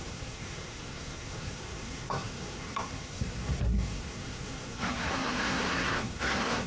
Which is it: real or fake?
fake